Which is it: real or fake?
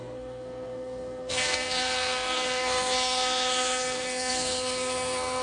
fake